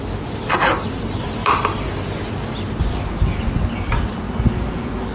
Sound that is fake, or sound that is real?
real